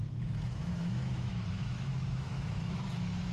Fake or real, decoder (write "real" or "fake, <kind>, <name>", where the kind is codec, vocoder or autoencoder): fake, autoencoder, DAC-VAE